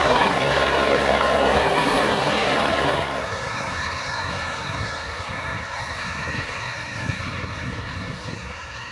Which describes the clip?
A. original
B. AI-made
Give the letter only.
B